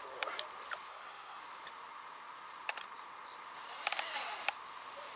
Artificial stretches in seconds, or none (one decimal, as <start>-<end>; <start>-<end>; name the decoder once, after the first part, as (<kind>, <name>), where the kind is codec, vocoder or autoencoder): 0.9-1.4 (codec, SNAC)

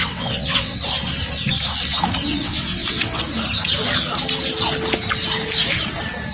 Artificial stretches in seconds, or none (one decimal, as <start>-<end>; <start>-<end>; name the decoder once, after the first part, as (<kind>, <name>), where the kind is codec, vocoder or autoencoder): 0.0-0.8 (vocoder, WaveNeXt); 2.3-3.2